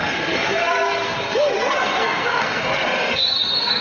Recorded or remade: remade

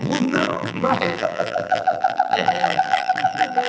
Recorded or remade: remade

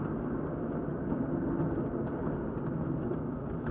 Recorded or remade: recorded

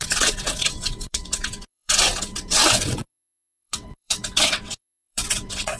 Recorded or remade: remade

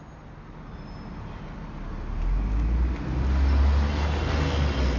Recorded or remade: recorded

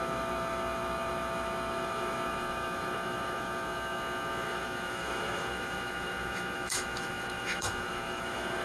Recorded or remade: remade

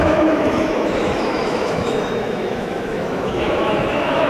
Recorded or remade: remade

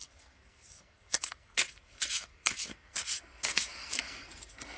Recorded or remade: remade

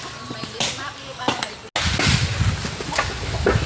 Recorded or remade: recorded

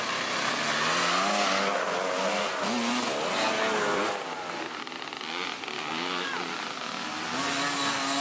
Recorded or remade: recorded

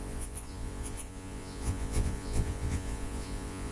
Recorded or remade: remade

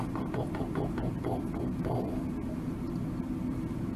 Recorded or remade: recorded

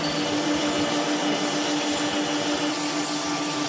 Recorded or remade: recorded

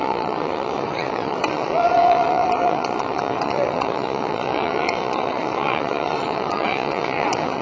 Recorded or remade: remade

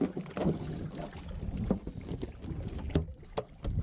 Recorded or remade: recorded